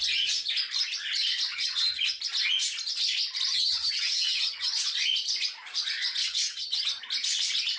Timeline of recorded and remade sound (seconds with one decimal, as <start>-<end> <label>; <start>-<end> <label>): 0.0-1.5 recorded; 1.5-2.2 remade; 2.2-3.5 recorded; 3.5-4.7 remade; 4.7-6.2 recorded; 6.2-7.0 remade; 7.0-7.8 recorded